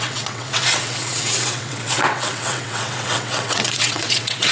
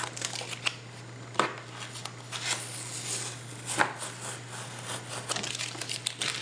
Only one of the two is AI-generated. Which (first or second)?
first